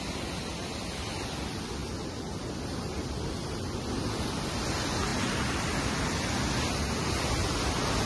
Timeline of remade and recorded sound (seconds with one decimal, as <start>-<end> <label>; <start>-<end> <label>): 0.0-8.1 recorded